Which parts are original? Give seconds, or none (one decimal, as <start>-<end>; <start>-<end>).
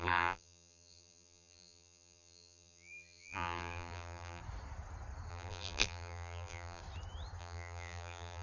4.4-5.3; 6.8-7.4